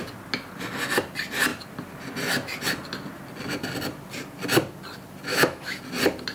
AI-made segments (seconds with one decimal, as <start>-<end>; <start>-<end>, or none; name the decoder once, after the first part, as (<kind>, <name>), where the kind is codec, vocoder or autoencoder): 5.3-5.8 (autoencoder, DAC-VAE)